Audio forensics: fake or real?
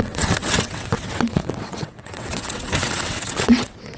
fake